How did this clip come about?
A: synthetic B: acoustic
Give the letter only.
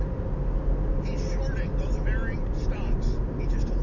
B